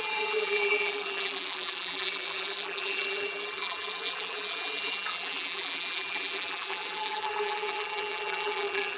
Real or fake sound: fake